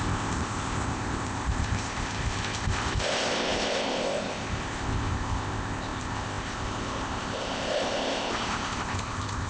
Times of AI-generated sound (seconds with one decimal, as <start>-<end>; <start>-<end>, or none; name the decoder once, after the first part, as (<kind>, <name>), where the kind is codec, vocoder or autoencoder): 0.0-9.5 (codec, ZipCodec)